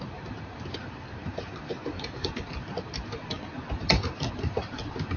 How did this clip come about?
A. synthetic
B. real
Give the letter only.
A